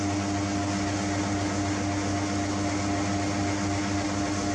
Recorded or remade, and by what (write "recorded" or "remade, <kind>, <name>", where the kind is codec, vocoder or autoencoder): recorded